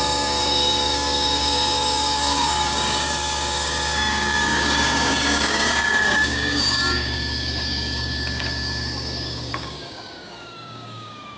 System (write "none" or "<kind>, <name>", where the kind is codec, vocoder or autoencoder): codec, DAC